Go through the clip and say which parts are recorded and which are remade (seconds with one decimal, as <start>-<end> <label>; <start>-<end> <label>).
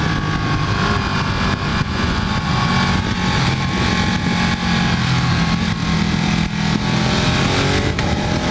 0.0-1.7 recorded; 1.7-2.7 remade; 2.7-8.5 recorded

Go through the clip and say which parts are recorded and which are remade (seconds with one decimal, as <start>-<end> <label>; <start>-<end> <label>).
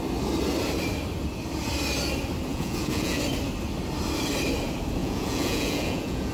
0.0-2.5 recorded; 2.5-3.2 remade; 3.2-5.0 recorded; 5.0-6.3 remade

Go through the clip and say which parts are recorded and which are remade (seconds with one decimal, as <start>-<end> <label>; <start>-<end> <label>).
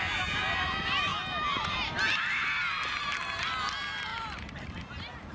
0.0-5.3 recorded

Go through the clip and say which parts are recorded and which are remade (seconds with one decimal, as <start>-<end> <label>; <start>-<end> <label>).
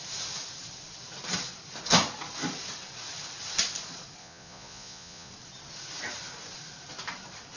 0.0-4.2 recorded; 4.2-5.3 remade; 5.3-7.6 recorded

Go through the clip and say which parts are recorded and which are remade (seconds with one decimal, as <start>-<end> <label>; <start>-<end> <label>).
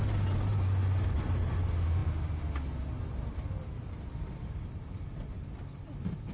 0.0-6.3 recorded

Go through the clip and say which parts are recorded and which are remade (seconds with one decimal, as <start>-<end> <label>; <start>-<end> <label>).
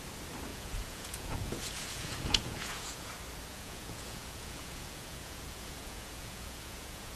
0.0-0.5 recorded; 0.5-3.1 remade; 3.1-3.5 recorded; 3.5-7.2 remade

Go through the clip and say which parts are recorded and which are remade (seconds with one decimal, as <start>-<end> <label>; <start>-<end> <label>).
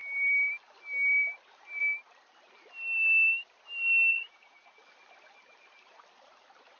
0.0-4.1 recorded; 4.1-4.8 remade; 4.8-6.8 recorded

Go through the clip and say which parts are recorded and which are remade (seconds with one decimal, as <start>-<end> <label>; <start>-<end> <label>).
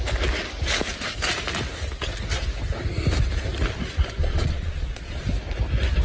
0.0-4.2 recorded; 4.2-5.3 remade; 5.3-6.0 recorded